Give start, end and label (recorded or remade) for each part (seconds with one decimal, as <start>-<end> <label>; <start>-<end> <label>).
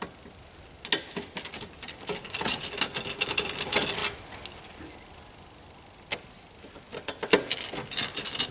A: 0.0-8.5 recorded